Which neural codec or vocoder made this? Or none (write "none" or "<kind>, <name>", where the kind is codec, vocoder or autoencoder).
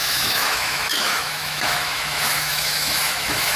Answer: autoencoder, DAC-VAE